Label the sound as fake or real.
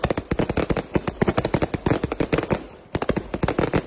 real